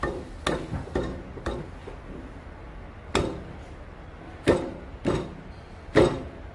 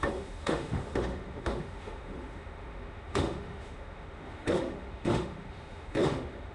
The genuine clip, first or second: first